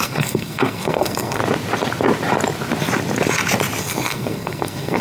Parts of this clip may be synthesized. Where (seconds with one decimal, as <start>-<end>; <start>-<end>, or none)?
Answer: 0.0-1.4; 3.8-5.0